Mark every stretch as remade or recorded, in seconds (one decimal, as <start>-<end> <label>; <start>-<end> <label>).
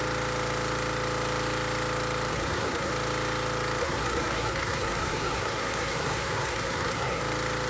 0.0-2.3 recorded; 2.3-2.9 remade; 2.9-3.8 recorded; 3.8-7.2 remade; 7.2-7.7 recorded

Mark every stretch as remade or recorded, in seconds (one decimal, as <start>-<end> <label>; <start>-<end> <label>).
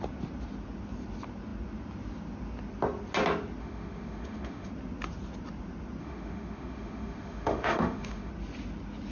0.0-3.6 recorded; 3.6-4.7 remade; 4.7-6.0 recorded; 6.0-8.3 remade; 8.3-9.1 recorded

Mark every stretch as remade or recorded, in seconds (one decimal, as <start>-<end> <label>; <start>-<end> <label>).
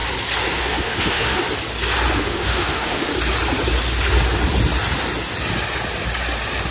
0.0-0.6 recorded; 0.6-1.4 remade; 1.4-2.2 recorded; 2.2-3.1 remade; 3.1-6.7 recorded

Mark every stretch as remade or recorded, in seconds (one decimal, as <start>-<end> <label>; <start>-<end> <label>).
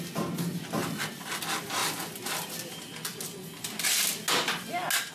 0.0-0.8 recorded; 0.8-1.4 remade; 1.4-5.1 recorded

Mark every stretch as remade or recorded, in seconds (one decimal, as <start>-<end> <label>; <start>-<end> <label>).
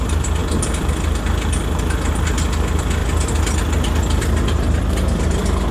0.0-5.7 recorded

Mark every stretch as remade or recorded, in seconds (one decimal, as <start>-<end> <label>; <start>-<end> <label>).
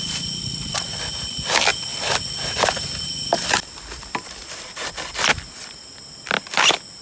0.0-0.4 recorded; 0.4-0.9 remade; 0.9-7.0 recorded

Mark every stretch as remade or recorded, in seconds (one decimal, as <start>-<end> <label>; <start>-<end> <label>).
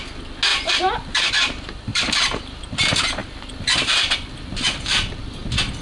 0.0-0.5 recorded; 0.5-1.3 remade; 1.3-1.9 recorded; 1.9-2.6 remade; 2.6-3.2 recorded; 3.2-5.8 remade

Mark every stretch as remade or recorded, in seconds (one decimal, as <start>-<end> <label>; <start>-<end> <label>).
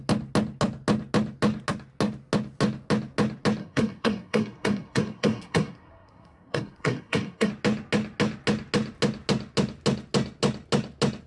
0.0-3.6 recorded; 3.6-7.5 remade; 7.5-11.3 recorded